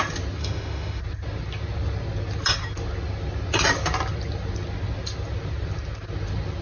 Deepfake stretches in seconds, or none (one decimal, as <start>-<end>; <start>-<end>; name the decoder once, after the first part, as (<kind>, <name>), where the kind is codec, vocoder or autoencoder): 0.4-1.0 (autoencoder, DAC-VAE)